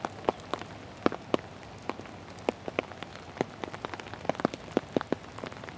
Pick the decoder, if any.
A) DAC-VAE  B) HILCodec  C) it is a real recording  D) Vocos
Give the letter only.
C